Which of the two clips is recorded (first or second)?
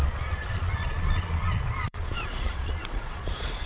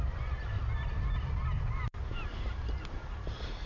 second